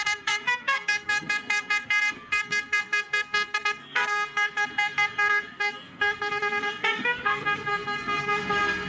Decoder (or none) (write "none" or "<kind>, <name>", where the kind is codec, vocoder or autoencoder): codec, SNAC